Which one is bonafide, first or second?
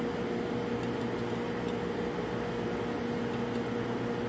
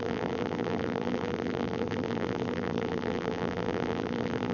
first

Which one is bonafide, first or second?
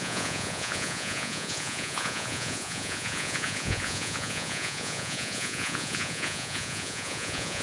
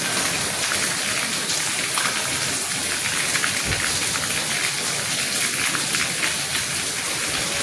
second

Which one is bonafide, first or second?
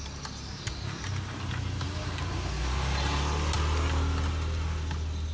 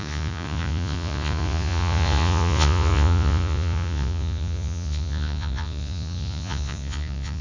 first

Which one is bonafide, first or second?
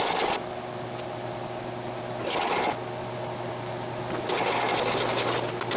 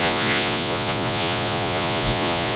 first